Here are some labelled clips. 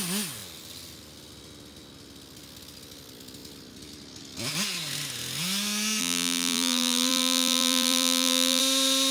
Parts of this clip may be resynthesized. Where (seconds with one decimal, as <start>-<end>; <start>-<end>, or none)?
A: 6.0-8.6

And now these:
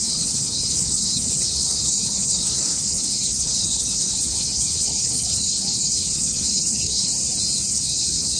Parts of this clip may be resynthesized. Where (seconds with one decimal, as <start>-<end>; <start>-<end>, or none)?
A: 0.0-7.1; 7.7-8.4

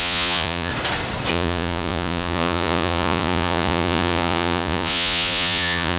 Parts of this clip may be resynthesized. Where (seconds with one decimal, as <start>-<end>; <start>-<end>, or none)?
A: 0.0-0.7; 1.3-6.0

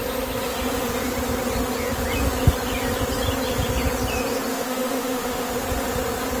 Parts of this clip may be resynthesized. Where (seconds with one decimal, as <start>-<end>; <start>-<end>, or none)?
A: 4.5-5.5

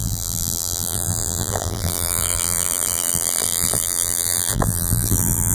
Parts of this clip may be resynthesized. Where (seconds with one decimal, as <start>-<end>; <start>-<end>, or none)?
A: 0.0-5.5

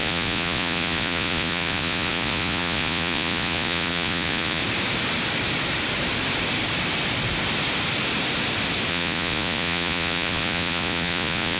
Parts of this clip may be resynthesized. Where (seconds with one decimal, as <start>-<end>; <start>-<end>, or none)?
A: 0.0-4.6; 8.9-11.6